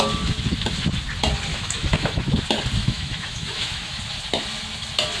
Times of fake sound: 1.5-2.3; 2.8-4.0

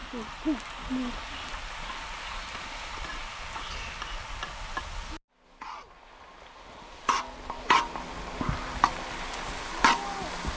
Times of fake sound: none

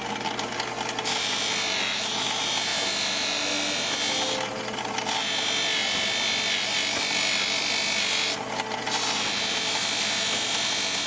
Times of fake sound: none

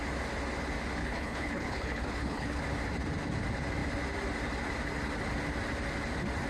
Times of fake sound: 1.0-2.6